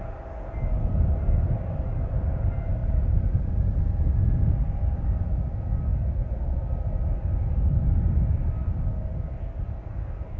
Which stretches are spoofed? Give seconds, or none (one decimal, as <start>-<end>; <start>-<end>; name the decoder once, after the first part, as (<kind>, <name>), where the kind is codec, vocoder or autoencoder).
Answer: 2.8-4.1 (vocoder, BigVGAN v2)